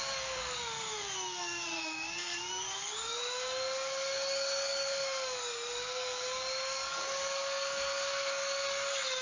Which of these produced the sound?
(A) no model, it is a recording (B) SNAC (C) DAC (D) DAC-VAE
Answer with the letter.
C